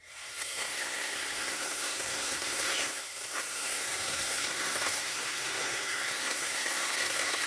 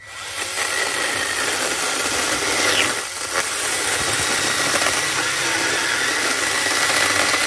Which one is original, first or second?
second